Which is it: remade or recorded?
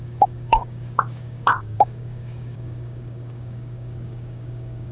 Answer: remade